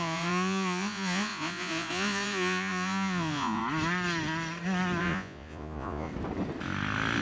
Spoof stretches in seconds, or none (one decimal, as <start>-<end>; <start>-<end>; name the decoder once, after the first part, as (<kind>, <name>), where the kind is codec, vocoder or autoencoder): 0.0-3.6 (vocoder, Vocos); 5.0-6.1